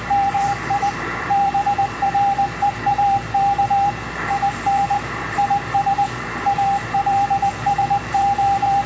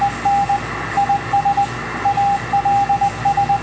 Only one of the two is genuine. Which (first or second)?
second